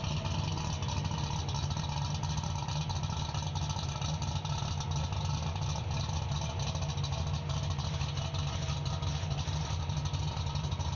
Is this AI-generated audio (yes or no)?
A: no